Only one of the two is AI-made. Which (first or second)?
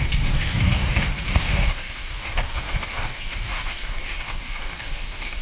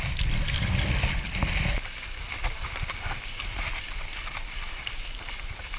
first